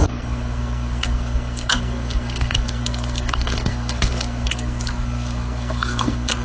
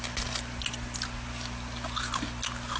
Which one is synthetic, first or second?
first